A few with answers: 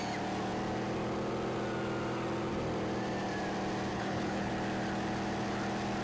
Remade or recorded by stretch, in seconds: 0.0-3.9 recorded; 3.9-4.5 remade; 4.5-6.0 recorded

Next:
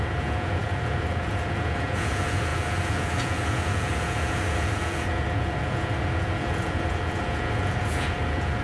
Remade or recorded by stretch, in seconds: 0.0-8.6 remade

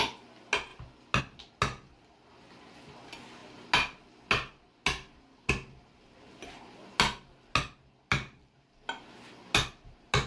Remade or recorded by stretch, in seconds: 0.0-10.3 recorded

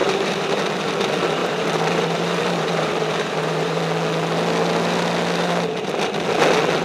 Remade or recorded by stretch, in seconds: 0.0-0.6 remade; 0.6-1.4 recorded; 1.4-3.8 remade; 3.8-6.8 recorded